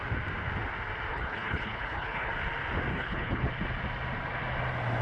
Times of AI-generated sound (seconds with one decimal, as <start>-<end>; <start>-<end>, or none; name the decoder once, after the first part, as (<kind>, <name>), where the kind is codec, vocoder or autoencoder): 1.1-2.3 (codec, HILCodec); 2.9-3.5